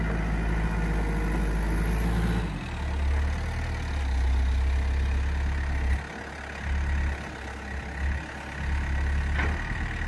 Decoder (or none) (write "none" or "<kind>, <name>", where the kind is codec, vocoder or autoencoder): none